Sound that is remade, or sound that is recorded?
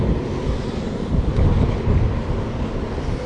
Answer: recorded